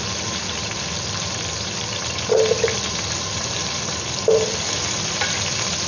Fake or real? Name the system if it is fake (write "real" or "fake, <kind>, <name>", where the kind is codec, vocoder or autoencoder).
real